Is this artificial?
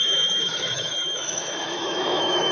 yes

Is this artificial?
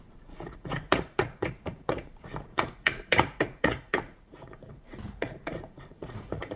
yes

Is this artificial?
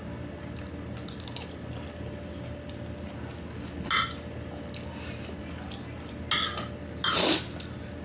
no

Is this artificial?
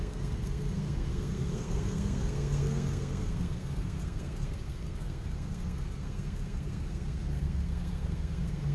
yes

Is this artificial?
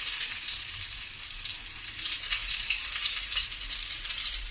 yes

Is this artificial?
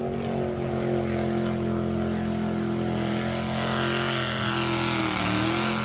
no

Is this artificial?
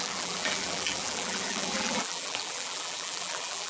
yes